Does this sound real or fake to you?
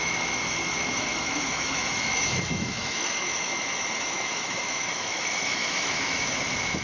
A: fake